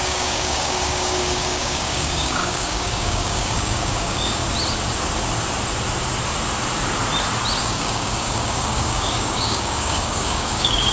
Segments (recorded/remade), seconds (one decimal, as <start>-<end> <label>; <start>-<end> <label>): 0.0-4.4 remade; 4.4-7.6 recorded; 7.6-10.9 remade